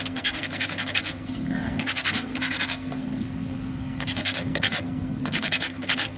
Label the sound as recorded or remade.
remade